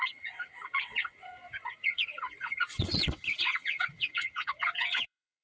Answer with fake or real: fake